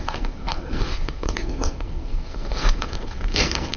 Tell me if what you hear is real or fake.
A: fake